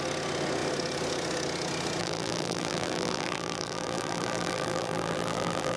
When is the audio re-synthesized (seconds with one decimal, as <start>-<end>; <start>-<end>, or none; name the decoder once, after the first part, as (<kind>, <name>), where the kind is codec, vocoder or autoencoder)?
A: 2.0-5.8 (vocoder, BigVGAN v2)